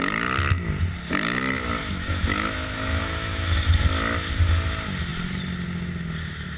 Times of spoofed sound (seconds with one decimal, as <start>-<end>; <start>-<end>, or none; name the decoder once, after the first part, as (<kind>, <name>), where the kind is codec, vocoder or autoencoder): 1.8-3.8 (autoencoder, DAC-VAE)